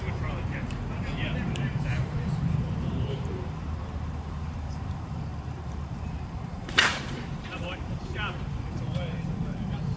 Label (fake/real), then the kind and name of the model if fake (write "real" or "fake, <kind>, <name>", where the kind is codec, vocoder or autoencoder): fake, vocoder, BigVGAN v2